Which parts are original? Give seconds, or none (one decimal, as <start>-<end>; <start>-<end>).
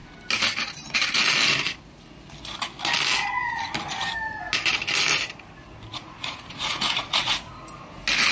0.0-5.9; 7.5-8.3